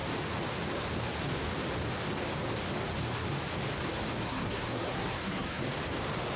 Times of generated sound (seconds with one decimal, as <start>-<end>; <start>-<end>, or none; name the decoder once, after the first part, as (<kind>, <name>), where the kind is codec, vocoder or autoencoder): 4.2-5.6 (codec, SNAC)